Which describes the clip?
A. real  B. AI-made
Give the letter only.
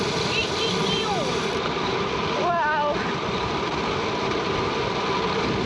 B